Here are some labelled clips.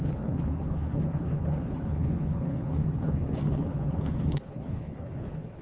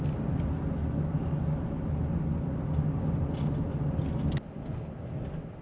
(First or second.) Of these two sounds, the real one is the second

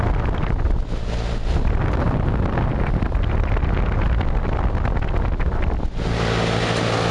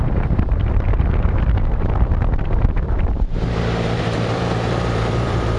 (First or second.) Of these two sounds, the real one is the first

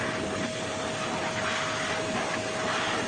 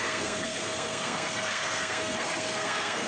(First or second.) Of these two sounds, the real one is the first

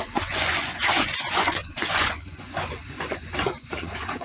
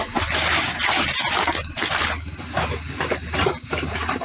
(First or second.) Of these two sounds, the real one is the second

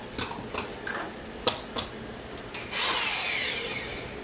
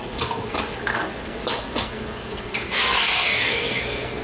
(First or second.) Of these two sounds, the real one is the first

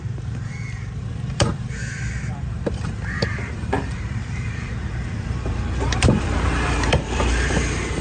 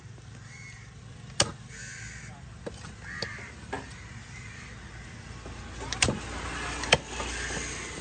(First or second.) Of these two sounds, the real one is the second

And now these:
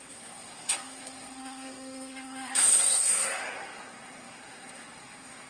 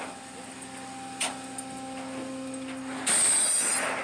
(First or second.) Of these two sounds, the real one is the second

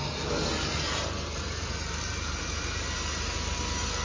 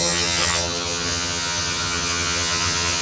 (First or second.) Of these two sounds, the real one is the first